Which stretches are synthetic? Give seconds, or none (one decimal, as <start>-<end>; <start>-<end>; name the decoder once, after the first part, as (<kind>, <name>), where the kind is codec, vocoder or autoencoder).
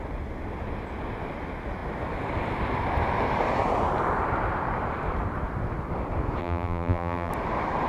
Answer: 6.4-7.3 (vocoder, BigVGAN v2)